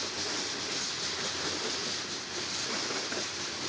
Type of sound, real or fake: real